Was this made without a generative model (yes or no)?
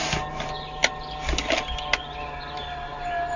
yes